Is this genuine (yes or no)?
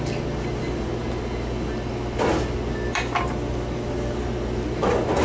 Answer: yes